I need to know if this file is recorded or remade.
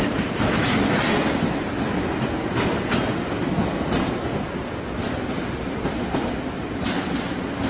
recorded